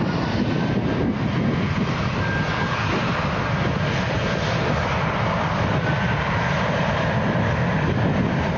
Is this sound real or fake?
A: real